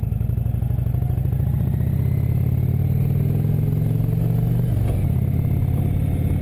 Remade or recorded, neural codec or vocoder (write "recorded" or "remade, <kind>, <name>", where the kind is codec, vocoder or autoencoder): recorded